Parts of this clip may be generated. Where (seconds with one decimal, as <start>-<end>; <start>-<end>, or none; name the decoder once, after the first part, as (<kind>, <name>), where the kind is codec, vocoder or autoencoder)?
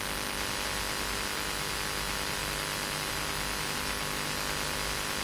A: none